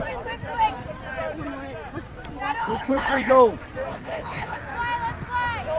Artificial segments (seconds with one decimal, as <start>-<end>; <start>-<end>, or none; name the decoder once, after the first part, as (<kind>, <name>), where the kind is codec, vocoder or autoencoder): 2.6-3.3 (codec, HILCodec); 3.9-4.6